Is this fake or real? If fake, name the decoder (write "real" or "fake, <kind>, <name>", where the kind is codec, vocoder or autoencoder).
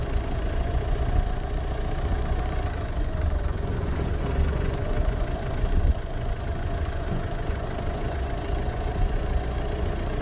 fake, vocoder, Vocos